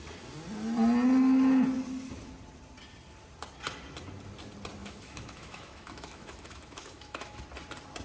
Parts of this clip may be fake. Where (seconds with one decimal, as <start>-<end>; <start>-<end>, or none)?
4.8-7.4